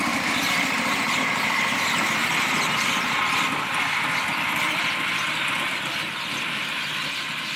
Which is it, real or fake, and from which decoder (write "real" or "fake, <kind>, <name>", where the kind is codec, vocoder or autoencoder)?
fake, vocoder, BigVGAN v2